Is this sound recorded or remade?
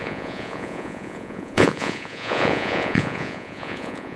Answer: remade